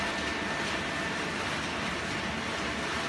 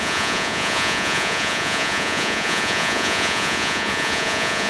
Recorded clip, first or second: first